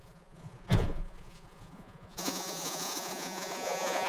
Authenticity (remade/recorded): remade